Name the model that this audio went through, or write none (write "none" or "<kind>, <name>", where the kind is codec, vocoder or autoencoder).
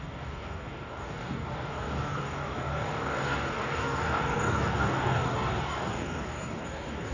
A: codec, DAC